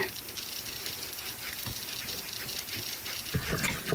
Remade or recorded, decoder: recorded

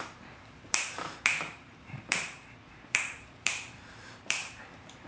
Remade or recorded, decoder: remade, vocoder, BigVGAN v2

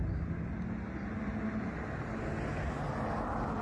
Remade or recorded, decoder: recorded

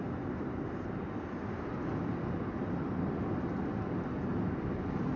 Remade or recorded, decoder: recorded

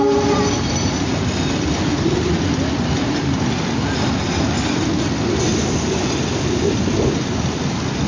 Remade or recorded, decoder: recorded